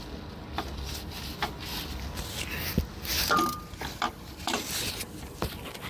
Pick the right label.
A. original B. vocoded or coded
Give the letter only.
A